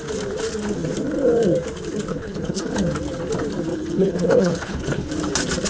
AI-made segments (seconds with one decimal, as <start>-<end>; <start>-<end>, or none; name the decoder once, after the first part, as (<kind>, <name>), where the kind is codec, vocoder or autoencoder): 2.1-2.7 (codec, HILCodec); 3.7-5.1